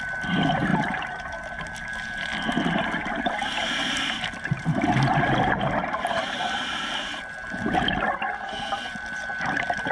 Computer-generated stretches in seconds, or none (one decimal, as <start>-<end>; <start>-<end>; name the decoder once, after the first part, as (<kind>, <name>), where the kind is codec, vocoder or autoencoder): none